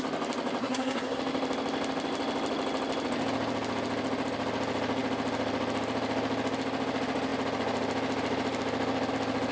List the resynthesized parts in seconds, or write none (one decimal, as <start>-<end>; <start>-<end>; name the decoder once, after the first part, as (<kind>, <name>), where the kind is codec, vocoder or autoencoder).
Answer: 0.6-1.2 (codec, SNAC)